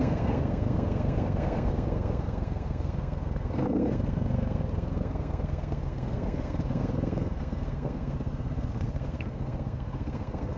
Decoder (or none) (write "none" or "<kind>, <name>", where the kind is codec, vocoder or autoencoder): codec, SNAC